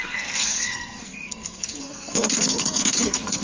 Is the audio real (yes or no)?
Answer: no